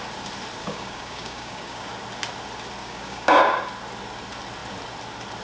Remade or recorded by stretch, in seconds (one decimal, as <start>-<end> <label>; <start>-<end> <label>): 0.0-0.6 recorded; 0.6-1.9 remade; 1.9-2.8 recorded; 2.8-3.6 remade; 3.6-5.4 recorded